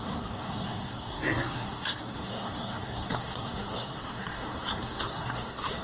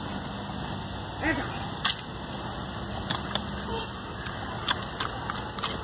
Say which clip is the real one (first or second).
second